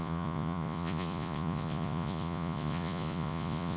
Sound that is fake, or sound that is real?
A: fake